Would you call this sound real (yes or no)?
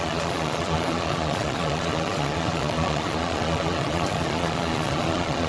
no